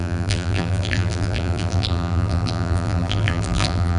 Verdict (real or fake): fake